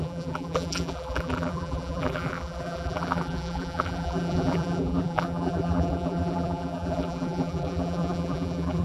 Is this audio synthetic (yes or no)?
yes